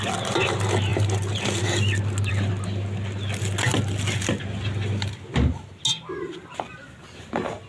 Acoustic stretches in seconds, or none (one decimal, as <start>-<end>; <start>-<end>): 0.0-7.7